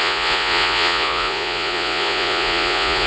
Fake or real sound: fake